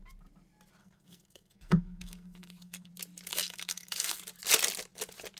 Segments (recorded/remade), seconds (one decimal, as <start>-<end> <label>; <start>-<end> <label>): 0.0-0.8 recorded; 0.8-2.9 remade; 2.9-3.3 recorded; 3.3-4.2 remade; 4.2-5.4 recorded

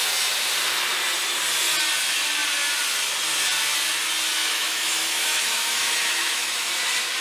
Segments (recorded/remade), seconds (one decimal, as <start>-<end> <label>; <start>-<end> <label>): 0.0-4.4 recorded; 4.4-6.7 remade; 6.7-7.2 recorded

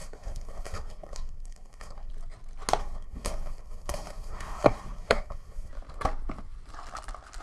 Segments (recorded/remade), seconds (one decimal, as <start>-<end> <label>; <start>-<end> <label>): 0.0-2.1 remade; 2.1-2.8 recorded; 2.8-5.7 remade; 5.7-7.4 recorded

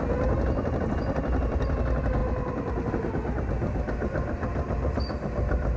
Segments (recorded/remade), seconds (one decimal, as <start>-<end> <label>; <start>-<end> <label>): 0.0-5.8 recorded

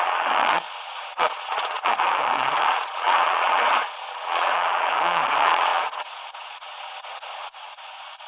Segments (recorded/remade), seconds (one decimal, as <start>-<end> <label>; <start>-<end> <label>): 0.0-8.3 remade